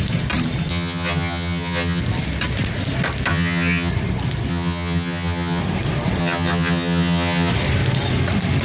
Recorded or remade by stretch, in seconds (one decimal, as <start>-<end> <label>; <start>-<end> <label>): 0.0-0.7 recorded; 0.7-2.0 remade; 2.0-3.3 recorded; 3.3-3.9 remade; 3.9-4.5 recorded; 4.5-5.6 remade; 5.6-6.2 recorded; 6.2-7.5 remade; 7.5-8.6 recorded